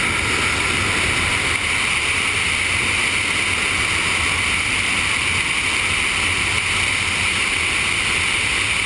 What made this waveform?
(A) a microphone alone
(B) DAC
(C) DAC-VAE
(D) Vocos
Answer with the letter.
A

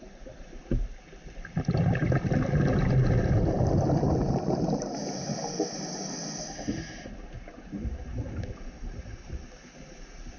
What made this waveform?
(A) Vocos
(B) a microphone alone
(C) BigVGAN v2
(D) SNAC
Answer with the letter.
B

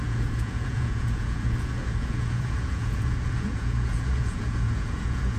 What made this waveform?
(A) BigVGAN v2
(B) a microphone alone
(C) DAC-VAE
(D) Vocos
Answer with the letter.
D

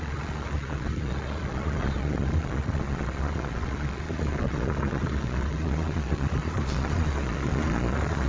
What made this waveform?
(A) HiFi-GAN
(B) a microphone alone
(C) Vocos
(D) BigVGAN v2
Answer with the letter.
C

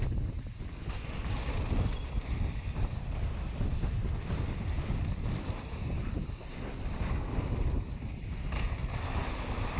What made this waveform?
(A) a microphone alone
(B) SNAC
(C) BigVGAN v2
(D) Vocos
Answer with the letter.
A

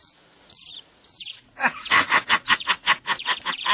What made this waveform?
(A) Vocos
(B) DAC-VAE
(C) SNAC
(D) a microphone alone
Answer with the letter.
A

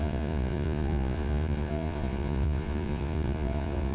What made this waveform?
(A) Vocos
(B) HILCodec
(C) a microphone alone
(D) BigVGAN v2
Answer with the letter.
A